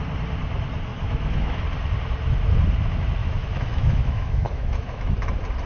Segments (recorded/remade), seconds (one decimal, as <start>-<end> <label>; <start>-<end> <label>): 0.0-0.9 recorded; 0.9-1.6 remade; 1.6-3.2 recorded; 3.2-5.3 remade; 5.3-5.7 recorded